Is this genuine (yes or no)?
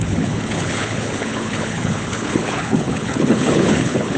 no